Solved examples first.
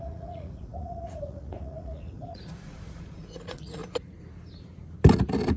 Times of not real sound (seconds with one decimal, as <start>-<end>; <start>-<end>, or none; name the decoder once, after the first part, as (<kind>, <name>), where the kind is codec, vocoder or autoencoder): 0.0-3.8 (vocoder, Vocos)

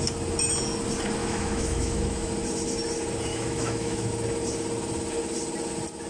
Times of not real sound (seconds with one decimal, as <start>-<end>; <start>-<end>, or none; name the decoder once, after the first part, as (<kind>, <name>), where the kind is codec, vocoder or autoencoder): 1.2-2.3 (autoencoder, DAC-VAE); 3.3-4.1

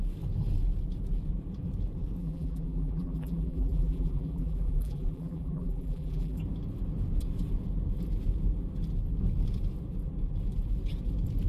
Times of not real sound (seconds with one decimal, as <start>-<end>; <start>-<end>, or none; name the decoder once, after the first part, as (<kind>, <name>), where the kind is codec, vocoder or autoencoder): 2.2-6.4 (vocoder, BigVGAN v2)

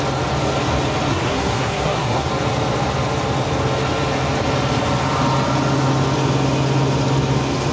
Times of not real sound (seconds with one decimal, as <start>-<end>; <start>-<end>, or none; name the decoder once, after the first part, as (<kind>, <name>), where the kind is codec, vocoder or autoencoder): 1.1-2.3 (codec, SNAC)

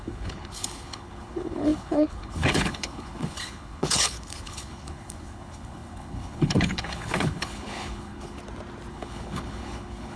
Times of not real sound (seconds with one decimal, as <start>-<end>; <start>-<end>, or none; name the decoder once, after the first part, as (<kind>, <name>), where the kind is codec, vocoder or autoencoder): 0.0-8.4 (codec, HILCodec); 8.9-10.2

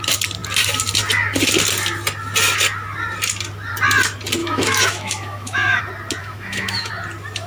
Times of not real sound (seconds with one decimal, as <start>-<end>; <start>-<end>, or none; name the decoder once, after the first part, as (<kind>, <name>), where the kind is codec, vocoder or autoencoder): 4.4-5.8 (autoencoder, DAC-VAE); 6.2-6.9